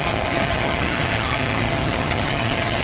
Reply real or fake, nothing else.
fake